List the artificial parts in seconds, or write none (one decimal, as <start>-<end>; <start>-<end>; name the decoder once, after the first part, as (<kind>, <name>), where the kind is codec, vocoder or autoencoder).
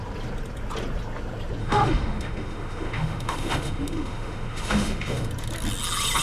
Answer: 1.6-5.3 (autoencoder, DAC-VAE)